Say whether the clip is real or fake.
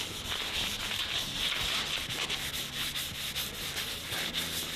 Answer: real